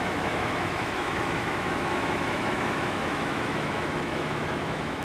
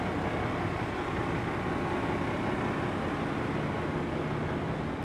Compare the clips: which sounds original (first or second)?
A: second